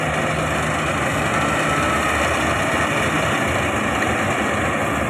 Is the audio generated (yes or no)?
no